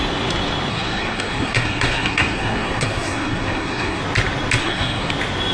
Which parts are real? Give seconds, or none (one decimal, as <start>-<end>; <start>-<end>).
0.0-0.7; 4.0-4.6; 5.1-5.5